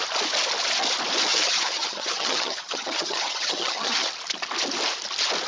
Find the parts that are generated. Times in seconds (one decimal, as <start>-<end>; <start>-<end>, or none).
1.3-4.1